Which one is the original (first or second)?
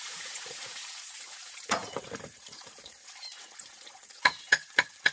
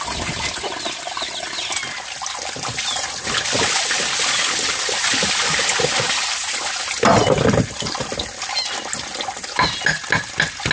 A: second